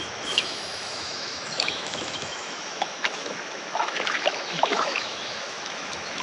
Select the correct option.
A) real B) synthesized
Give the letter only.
B